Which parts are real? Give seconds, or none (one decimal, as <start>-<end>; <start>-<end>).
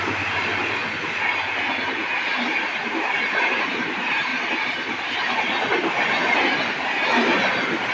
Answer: 0.8-1.3; 2.0-2.5; 4.3-7.9